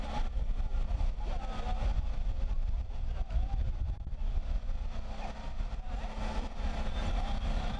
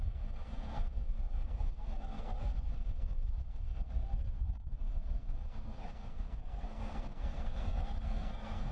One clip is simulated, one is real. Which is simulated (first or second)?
second